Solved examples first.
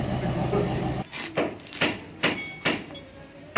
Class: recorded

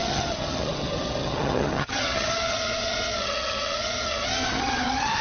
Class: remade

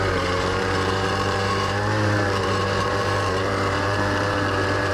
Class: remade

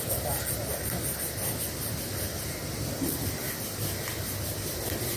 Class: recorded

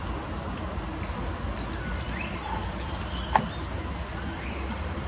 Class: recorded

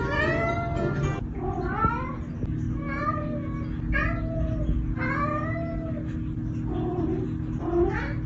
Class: recorded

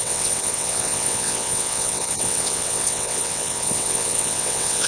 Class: remade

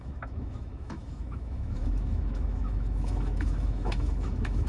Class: remade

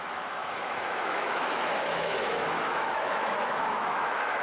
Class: remade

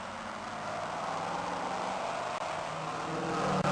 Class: recorded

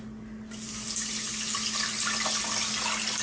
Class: recorded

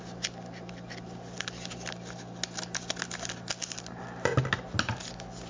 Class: recorded